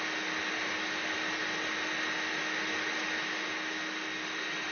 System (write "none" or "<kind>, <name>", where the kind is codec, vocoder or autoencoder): none